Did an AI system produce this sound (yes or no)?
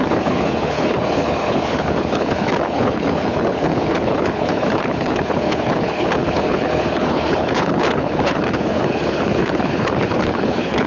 yes